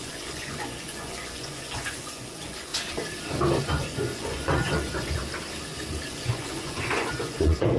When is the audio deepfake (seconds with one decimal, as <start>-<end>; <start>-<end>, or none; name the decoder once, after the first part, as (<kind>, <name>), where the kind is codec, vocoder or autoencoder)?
0.0-2.7 (vocoder, Vocos); 3.6-5.2; 6.1-7.8